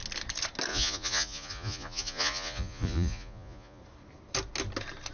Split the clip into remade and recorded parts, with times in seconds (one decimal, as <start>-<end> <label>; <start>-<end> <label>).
0.0-0.7 recorded; 0.7-3.8 remade; 3.8-5.1 recorded